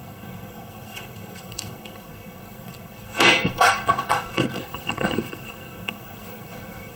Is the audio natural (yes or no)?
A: no